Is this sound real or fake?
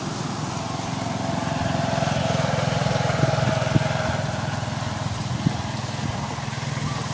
real